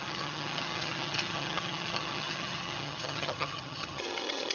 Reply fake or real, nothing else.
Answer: fake